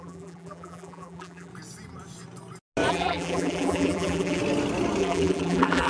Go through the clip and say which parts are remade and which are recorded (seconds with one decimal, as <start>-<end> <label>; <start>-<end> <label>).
0.0-1.5 remade; 1.5-2.9 recorded; 2.9-4.4 remade; 4.4-5.0 recorded; 5.0-5.9 remade